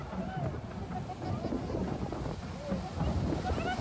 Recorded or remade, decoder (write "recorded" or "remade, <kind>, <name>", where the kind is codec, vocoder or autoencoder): recorded